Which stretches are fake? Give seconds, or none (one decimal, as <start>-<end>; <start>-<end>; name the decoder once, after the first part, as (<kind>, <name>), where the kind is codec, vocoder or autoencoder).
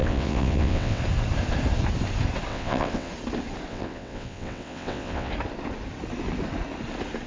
0.0-1.0 (vocoder, WaveNeXt); 2.5-3.1; 3.7-5.3